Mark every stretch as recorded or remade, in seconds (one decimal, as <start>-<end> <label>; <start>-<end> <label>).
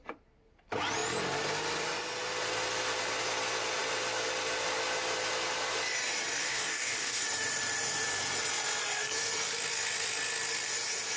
0.0-6.4 recorded; 6.4-7.2 remade; 7.2-11.2 recorded